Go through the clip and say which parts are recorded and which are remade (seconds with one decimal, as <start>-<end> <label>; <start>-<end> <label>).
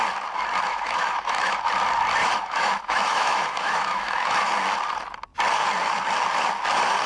0.0-0.7 recorded; 0.7-1.6 remade; 1.6-2.2 recorded; 2.2-4.5 remade; 4.5-7.1 recorded